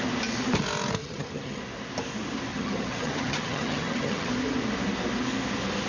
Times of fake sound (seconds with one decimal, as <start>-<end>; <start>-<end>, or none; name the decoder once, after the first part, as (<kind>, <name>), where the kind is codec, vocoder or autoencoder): 1.0-1.6 (vocoder, HiFi-GAN); 2.5-4.3